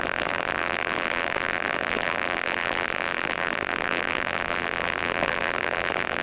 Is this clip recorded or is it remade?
remade